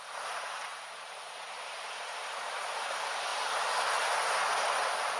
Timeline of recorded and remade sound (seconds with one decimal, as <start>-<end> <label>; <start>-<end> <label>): 0.0-0.7 recorded; 0.7-2.9 remade; 2.9-5.2 recorded

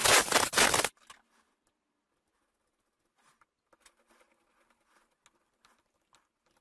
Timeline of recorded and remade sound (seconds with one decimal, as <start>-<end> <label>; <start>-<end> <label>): 0.0-0.5 remade; 0.5-6.6 recorded

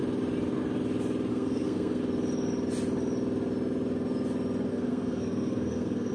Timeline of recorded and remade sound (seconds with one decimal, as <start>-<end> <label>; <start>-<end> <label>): 0.0-1.3 recorded; 1.3-2.0 remade; 2.0-4.7 recorded; 4.7-6.1 remade